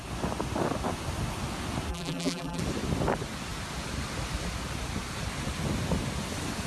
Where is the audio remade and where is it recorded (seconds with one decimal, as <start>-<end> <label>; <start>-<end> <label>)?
0.0-1.9 recorded; 1.9-2.6 remade; 2.6-6.7 recorded